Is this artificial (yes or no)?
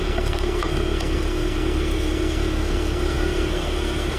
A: yes